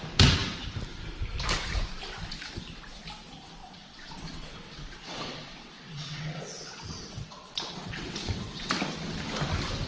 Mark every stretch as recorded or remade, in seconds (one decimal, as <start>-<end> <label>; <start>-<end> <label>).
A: 0.0-3.6 recorded; 3.6-8.7 remade; 8.7-9.9 recorded